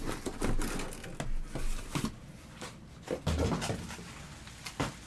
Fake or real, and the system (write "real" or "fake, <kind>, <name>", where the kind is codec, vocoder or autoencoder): real